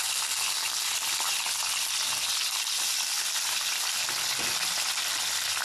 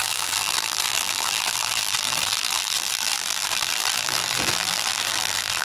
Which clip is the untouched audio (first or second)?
first